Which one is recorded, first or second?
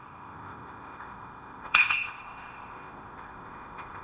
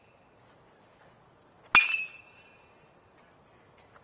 second